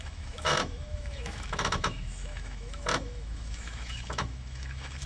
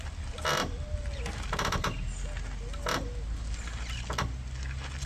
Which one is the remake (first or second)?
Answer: first